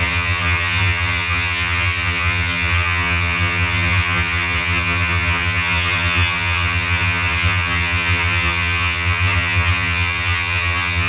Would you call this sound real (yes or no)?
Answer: no